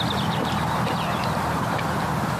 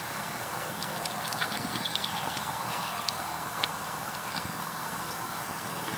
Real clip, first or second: first